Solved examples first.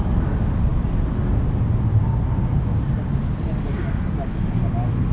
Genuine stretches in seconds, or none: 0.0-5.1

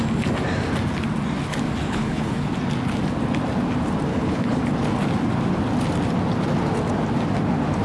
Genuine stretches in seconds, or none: 0.0-1.8; 2.5-4.1; 4.6-7.8

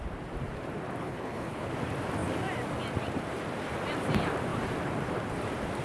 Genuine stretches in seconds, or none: 0.0-1.0; 1.7-5.8

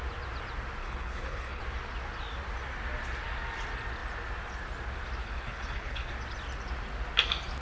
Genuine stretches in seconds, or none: 0.0-0.8; 1.6-5.2; 6.1-7.6

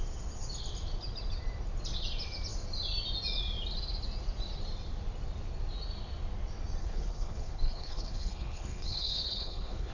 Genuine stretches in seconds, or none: 0.0-6.8